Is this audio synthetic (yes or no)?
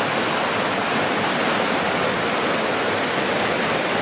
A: no